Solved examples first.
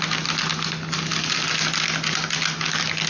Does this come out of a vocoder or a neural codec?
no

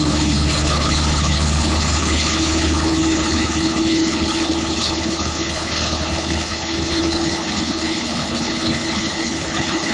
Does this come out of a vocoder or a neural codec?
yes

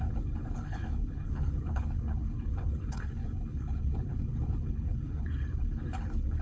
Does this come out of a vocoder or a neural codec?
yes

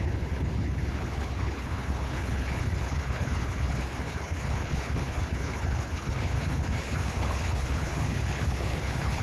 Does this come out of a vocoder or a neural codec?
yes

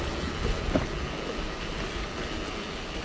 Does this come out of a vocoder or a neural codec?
no